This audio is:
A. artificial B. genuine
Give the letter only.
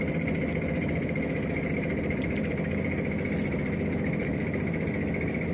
B